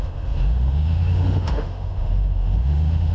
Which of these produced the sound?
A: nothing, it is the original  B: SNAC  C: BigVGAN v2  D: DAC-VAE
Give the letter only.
D